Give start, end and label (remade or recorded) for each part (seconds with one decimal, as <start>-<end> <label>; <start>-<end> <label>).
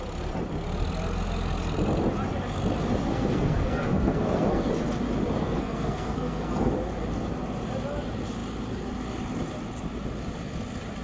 0.0-3.1 recorded; 3.1-4.7 remade; 4.7-5.4 recorded; 5.4-6.7 remade; 6.7-11.0 recorded